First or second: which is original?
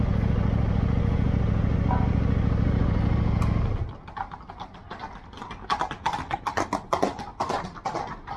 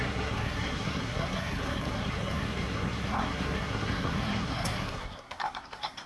first